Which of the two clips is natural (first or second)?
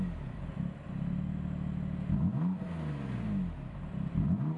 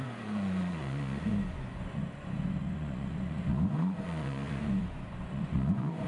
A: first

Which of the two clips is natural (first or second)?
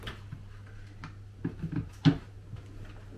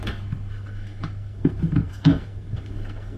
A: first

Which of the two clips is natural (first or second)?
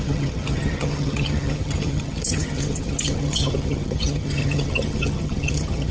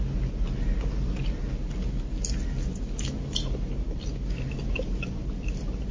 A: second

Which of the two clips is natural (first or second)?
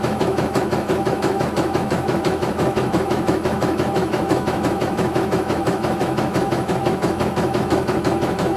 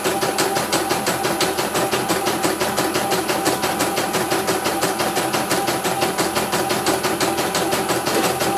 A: second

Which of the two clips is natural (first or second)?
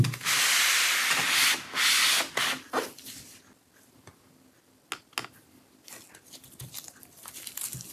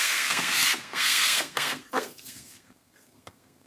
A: first